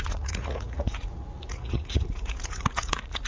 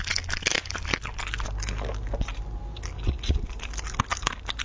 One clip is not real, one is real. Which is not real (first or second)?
first